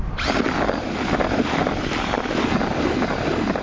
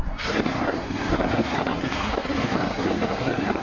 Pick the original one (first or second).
first